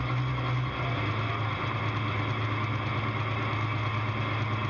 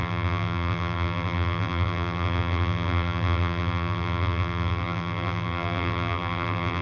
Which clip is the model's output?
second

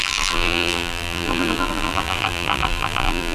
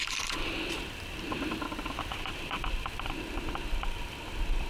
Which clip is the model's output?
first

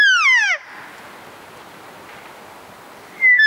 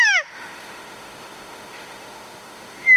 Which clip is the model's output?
second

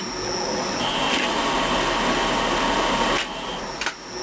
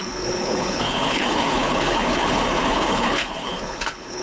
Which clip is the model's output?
second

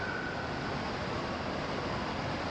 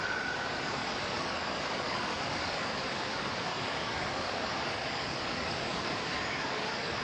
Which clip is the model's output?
second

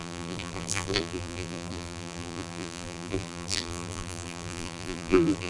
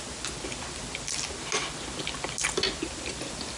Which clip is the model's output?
first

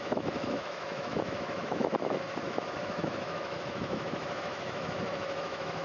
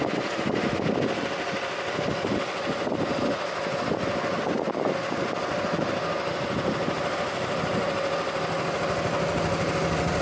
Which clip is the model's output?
first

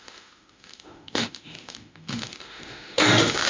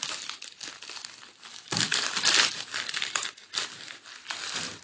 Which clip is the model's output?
first